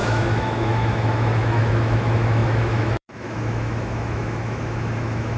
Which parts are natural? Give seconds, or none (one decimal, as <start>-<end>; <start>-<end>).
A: none